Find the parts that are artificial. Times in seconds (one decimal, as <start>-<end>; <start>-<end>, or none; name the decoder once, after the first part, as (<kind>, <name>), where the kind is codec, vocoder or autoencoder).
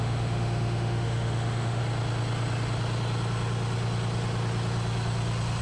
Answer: 0.0-1.8 (autoencoder, DAC-VAE)